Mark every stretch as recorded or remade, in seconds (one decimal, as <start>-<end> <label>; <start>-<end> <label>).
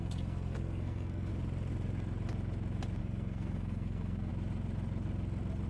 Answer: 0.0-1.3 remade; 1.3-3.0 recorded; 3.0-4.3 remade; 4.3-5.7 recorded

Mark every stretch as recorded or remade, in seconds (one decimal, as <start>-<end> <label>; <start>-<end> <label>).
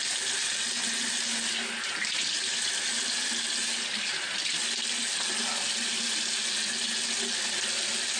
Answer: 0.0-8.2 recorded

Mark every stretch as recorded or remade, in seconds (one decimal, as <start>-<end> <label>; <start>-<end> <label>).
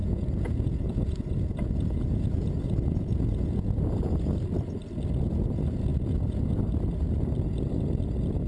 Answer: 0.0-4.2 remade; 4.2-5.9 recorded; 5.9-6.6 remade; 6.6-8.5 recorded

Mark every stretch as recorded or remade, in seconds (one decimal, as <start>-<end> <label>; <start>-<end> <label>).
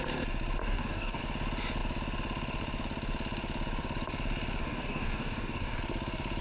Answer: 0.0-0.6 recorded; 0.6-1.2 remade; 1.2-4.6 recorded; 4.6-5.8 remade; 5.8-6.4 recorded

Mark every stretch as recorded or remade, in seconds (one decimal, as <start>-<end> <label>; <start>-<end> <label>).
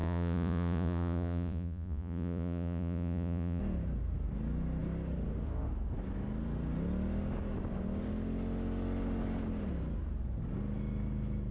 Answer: 0.0-3.6 remade; 3.6-11.5 recorded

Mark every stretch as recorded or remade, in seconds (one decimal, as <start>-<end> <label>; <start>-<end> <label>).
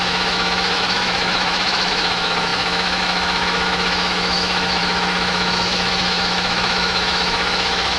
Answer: 0.0-8.0 remade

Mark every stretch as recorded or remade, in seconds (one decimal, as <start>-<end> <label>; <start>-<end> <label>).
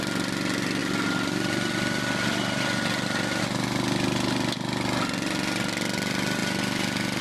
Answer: 0.0-0.8 recorded; 0.8-3.4 remade; 3.4-7.2 recorded